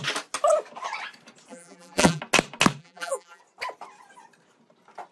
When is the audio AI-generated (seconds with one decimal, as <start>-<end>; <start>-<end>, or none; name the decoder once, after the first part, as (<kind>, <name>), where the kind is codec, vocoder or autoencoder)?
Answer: 1.5-2.2 (vocoder, BigVGAN v2); 2.8-3.4